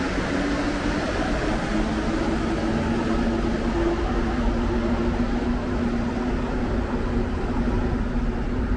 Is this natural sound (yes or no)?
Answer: yes